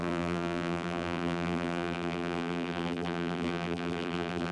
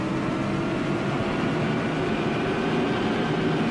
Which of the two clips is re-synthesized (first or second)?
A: first